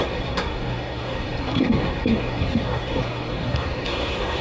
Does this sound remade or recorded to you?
remade